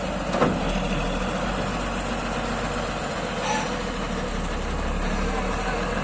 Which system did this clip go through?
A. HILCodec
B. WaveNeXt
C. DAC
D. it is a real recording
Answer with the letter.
D